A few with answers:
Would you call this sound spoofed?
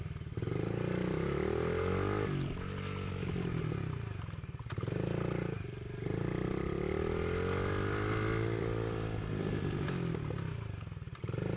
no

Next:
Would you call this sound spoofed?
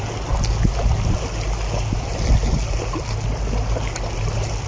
no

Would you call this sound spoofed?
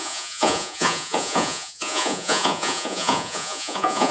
yes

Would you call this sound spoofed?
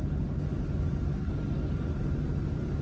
no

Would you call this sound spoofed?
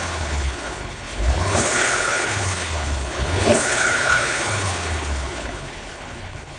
yes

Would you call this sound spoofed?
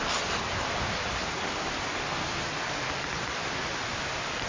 no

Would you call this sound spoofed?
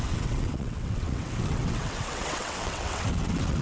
yes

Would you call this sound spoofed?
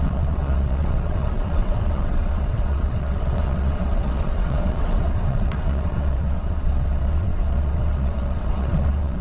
yes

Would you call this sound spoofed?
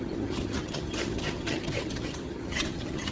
yes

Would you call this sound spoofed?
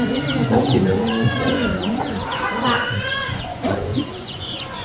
yes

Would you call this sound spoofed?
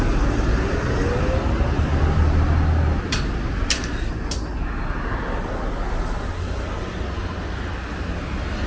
no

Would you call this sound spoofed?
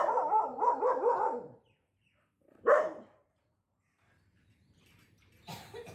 yes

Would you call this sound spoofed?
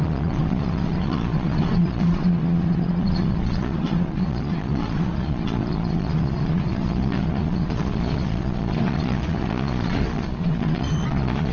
yes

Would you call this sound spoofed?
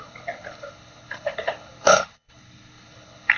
yes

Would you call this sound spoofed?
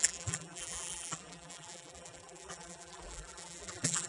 yes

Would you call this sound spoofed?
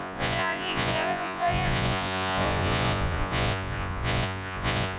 yes